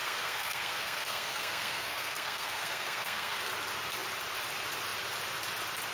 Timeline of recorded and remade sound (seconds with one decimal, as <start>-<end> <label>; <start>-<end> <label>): 0.0-3.5 remade; 3.5-5.9 recorded